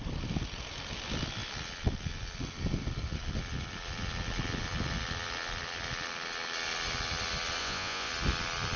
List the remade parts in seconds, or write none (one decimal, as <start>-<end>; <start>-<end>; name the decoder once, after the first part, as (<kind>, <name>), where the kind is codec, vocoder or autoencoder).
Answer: 7.6-8.1 (vocoder, Vocos)